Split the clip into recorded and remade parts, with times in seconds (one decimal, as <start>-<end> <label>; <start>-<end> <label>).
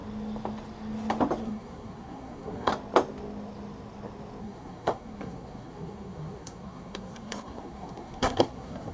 0.0-1.4 recorded; 1.4-2.7 remade; 2.7-4.4 recorded; 4.4-8.9 remade